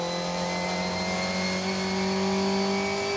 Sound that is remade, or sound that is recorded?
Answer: recorded